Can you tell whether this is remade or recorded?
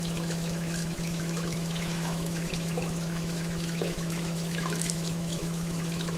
remade